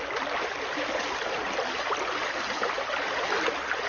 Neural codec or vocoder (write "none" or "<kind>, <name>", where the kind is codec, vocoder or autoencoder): none